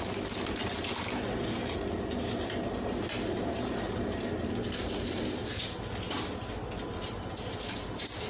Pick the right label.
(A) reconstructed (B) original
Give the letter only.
B